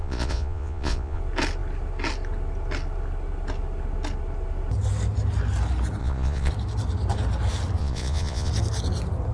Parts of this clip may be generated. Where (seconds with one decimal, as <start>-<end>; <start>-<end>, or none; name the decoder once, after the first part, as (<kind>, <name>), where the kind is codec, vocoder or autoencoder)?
0.0-1.2 (vocoder, Vocos); 6.0-6.5; 7.8-8.5

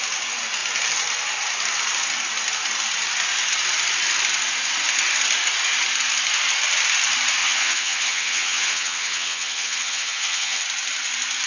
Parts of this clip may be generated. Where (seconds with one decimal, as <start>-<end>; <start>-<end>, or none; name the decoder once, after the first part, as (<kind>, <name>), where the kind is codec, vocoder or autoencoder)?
7.4-10.6 (vocoder, HiFi-GAN)

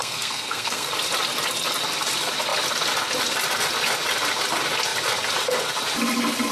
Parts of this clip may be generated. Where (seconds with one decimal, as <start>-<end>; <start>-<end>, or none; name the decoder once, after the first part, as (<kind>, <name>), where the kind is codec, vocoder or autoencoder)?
0.0-0.9 (codec, SNAC)

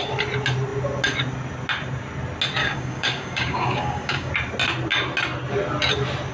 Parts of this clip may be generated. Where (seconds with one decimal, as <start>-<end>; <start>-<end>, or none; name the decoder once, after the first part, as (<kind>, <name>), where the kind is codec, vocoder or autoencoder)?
2.6-4.3 (codec, DAC)